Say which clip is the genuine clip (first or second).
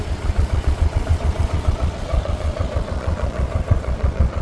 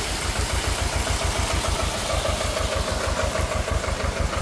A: second